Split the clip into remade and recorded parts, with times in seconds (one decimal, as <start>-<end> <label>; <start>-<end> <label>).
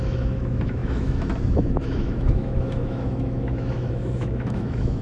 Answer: 0.0-5.0 remade